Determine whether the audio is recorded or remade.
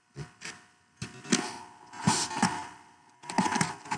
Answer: recorded